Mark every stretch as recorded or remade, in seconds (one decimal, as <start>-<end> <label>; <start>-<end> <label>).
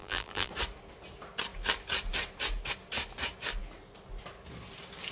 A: 0.0-0.5 remade; 0.5-5.1 recorded